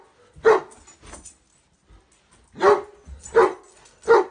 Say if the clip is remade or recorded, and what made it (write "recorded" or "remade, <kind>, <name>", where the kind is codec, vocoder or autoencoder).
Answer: recorded